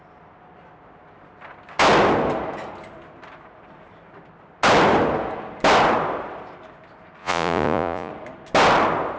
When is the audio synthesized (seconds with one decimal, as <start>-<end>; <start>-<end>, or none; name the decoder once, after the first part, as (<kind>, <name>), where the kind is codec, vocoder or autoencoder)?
7.2-8.1 (vocoder, Vocos)